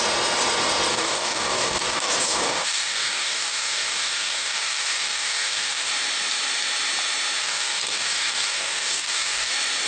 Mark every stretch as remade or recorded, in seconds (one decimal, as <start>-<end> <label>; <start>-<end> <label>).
0.0-0.9 recorded; 0.9-5.9 remade; 5.9-7.4 recorded; 7.4-9.5 remade; 9.5-9.9 recorded